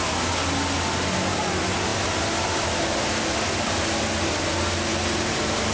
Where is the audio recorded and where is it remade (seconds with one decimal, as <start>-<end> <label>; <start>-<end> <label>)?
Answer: 0.0-5.7 recorded